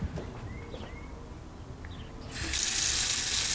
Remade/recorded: recorded